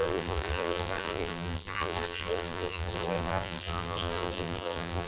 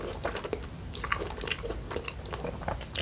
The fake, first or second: first